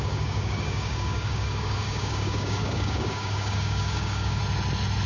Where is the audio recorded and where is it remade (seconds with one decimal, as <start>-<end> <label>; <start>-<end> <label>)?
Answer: 0.0-4.4 remade; 4.4-5.1 recorded